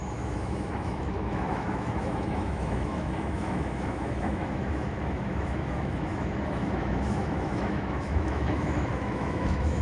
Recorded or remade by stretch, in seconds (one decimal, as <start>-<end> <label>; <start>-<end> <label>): 0.0-9.8 remade